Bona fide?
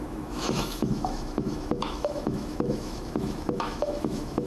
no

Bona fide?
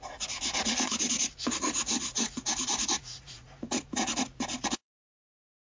no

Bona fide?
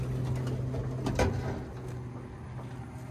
yes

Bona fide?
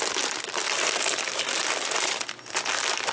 yes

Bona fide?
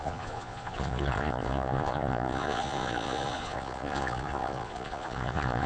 no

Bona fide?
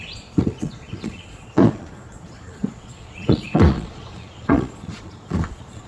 no